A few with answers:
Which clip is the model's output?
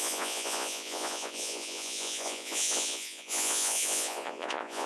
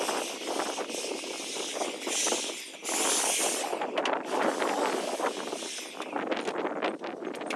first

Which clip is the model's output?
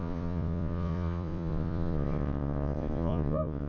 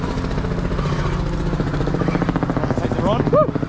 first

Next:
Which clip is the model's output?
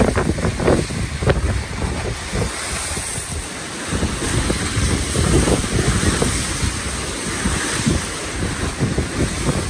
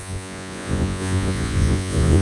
second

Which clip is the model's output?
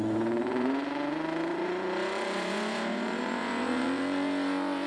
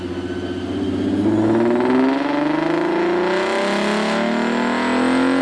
first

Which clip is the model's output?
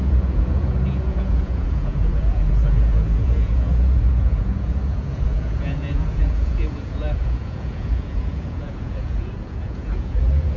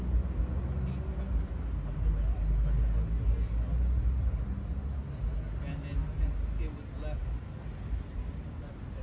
first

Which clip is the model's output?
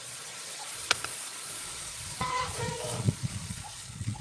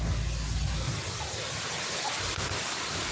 first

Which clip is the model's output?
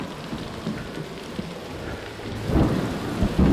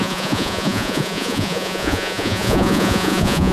second